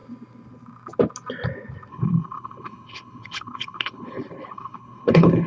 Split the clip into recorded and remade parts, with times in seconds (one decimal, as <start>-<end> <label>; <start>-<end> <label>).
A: 0.0-1.9 recorded; 1.9-5.5 remade